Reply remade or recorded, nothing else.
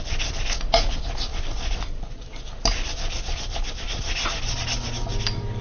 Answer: recorded